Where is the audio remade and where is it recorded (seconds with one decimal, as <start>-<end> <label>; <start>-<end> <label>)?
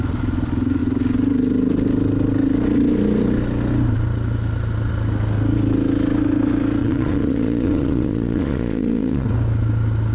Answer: 0.0-6.8 recorded; 6.8-9.3 remade; 9.3-10.1 recorded